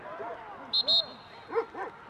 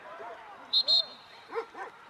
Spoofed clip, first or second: second